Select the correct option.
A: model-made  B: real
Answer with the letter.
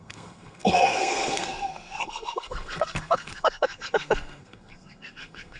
A